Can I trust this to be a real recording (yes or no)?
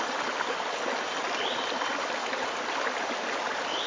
yes